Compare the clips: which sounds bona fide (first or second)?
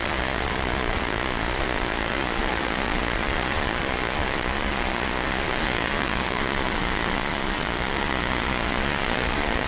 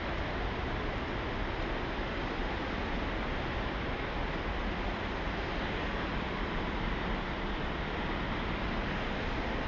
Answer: second